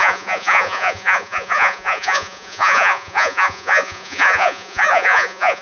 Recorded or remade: remade